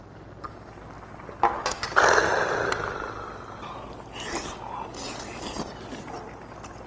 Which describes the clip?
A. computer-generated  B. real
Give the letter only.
B